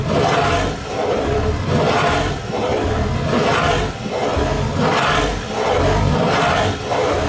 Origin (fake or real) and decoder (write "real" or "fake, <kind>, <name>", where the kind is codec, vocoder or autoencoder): real